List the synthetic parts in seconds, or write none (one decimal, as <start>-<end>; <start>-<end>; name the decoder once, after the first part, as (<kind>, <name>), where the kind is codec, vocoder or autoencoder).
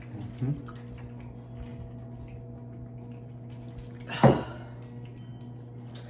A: none